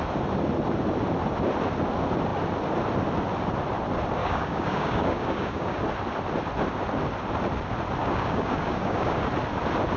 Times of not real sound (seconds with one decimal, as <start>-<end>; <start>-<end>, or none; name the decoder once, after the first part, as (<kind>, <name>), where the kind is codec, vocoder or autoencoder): 4.2-5.8 (codec, DAC); 8.0-9.3